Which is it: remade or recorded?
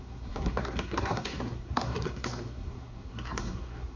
remade